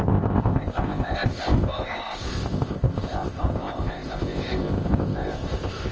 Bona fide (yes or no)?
no